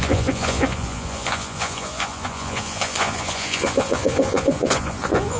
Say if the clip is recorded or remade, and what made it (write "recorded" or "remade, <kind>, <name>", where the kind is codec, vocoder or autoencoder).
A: remade, vocoder, Vocos